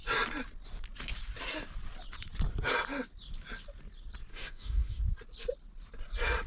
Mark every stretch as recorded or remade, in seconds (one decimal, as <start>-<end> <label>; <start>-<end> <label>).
0.0-4.3 recorded; 4.3-5.0 remade; 5.0-6.5 recorded